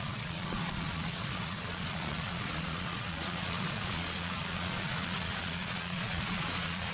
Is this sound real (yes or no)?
no